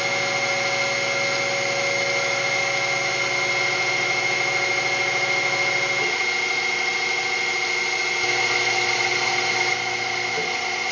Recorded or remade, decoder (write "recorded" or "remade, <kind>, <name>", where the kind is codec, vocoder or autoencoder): recorded